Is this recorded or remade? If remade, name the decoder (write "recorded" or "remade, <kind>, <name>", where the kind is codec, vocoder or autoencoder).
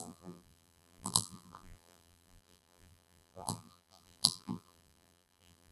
remade, vocoder, BigVGAN v2